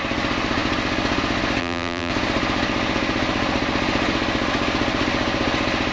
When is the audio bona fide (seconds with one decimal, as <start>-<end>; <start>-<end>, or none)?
0.0-1.6; 2.1-5.9